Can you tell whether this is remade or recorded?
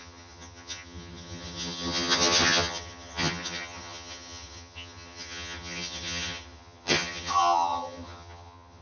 remade